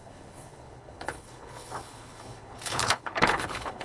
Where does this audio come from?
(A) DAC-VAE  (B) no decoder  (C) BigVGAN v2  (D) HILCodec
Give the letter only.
D